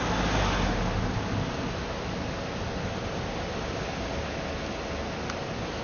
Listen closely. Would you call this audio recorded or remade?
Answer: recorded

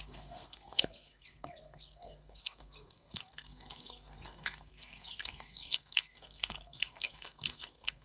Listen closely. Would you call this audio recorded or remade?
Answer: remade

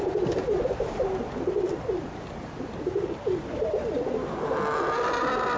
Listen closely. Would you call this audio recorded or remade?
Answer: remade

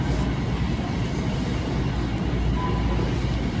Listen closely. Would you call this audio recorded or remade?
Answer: recorded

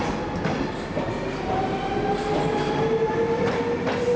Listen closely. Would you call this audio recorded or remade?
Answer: recorded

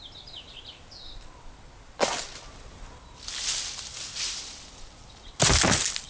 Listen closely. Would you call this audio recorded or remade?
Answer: recorded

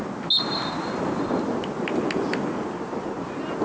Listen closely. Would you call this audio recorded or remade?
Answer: recorded